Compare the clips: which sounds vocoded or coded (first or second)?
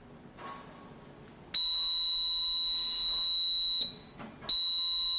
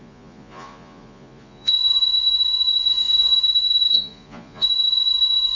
second